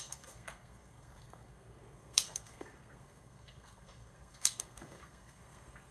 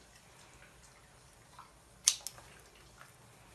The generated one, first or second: first